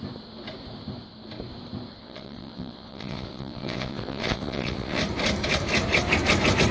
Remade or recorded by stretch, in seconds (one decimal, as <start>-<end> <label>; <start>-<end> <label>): 0.0-2.0 recorded; 2.0-5.0 remade; 5.0-6.7 recorded